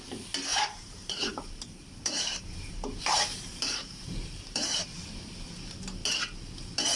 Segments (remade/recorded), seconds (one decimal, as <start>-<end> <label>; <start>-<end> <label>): 0.0-0.5 recorded; 0.5-1.6 remade; 1.6-2.0 recorded; 2.0-5.5 remade; 5.5-7.0 recorded